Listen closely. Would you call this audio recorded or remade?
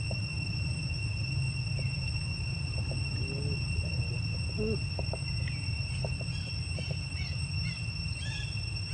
recorded